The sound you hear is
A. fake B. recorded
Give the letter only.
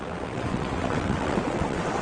A